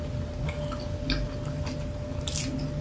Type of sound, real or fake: real